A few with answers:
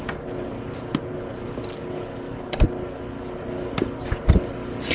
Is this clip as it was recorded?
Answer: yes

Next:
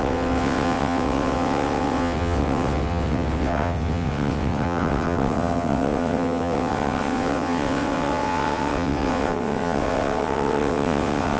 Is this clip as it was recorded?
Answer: no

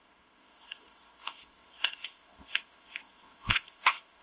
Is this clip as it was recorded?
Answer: no